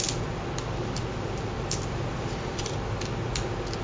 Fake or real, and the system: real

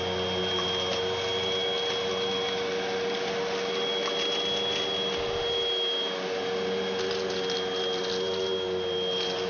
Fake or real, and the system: real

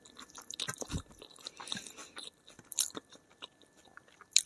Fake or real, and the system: real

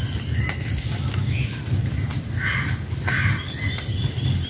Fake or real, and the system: real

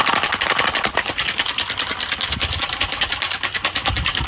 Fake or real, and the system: fake, vocoder, BigVGAN v2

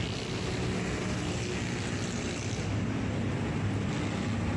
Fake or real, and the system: real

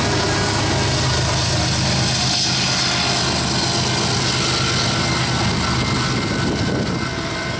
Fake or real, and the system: real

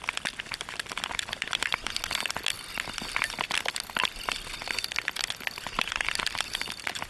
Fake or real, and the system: real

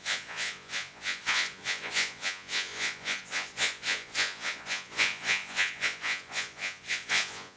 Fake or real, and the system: fake, vocoder, Vocos